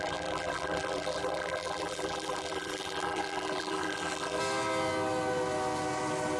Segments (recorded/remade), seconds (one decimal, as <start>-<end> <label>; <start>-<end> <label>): 0.0-4.4 remade; 4.4-6.4 recorded